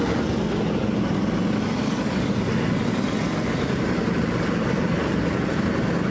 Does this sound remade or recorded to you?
recorded